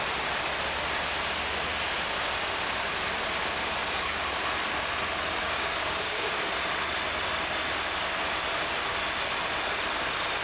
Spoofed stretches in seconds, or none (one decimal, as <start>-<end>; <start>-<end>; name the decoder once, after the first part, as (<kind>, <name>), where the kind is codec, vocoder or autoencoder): 5.4-6.5 (codec, DAC)